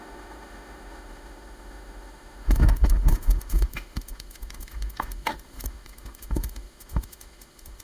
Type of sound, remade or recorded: remade